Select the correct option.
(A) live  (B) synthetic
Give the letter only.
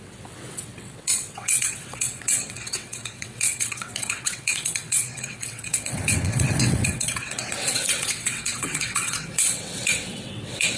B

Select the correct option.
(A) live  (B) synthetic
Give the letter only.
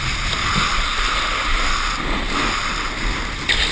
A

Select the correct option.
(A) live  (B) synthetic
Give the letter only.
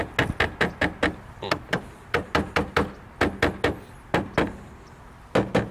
A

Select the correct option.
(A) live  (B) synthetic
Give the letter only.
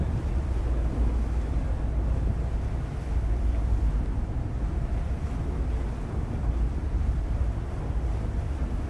A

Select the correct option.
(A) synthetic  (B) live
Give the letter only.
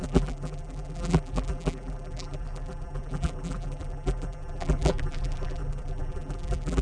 A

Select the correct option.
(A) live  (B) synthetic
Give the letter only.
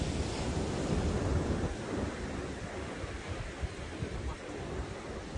A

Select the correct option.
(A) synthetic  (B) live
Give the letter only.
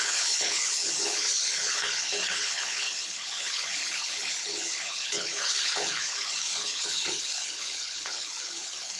A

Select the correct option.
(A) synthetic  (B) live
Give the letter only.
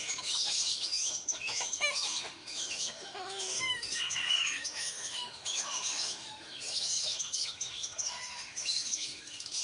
A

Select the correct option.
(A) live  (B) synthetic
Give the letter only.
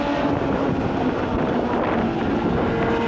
A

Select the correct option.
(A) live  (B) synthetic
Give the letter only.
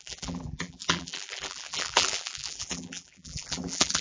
B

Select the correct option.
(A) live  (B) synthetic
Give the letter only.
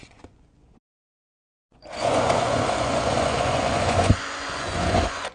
B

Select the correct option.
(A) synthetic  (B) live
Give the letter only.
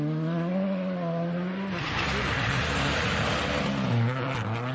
B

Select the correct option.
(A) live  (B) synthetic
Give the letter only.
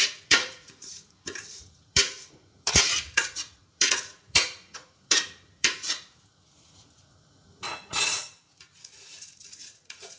B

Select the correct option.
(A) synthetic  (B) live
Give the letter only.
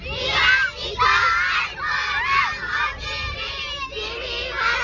B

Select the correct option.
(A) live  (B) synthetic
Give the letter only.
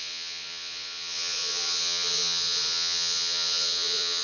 B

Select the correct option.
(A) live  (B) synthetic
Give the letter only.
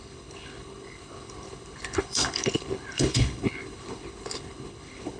B